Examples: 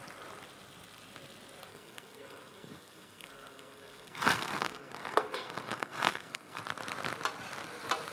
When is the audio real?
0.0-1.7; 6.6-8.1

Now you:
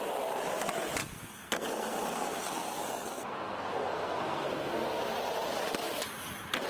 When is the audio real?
0.0-1.0; 5.0-6.7

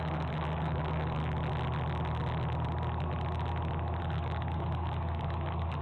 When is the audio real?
1.2-4.0

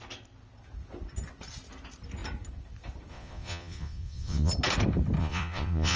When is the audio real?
0.0-3.1; 4.5-5.2